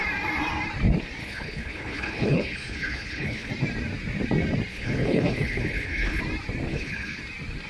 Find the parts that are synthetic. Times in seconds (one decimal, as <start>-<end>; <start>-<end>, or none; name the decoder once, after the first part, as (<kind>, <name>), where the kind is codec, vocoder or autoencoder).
1.2-3.5 (codec, HILCodec); 4.7-6.2; 6.7-7.2